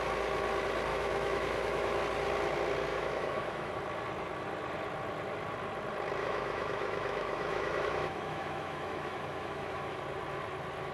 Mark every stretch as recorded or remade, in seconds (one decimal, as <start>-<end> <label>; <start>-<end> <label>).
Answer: 0.0-0.9 recorded; 0.9-2.0 remade; 2.0-2.9 recorded; 2.9-3.7 remade; 3.7-6.2 recorded; 6.2-10.0 remade; 10.0-10.9 recorded